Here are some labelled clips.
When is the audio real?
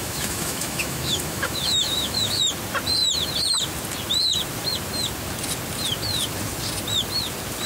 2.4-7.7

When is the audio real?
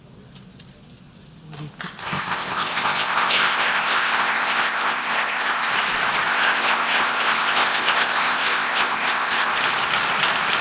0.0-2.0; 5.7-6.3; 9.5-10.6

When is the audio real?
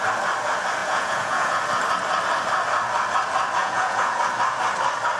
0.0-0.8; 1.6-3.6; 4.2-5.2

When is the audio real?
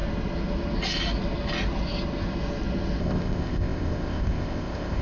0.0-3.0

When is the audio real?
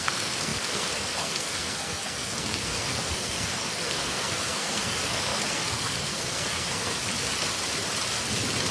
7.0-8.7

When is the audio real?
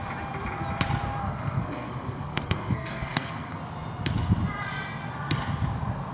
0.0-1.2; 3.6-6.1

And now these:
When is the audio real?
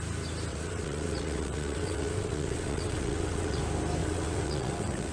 0.0-0.5; 3.6-4.0